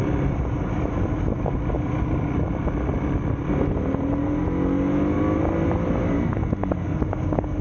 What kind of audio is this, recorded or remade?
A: recorded